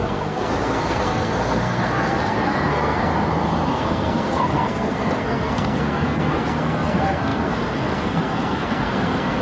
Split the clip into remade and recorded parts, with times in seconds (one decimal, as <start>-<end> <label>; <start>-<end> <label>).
0.0-3.1 remade; 3.1-3.7 recorded; 3.7-9.4 remade